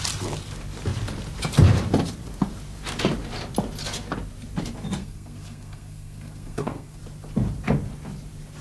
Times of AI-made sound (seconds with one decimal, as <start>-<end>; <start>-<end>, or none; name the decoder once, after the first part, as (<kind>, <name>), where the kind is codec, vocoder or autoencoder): 5.0-7.0 (codec, SNAC)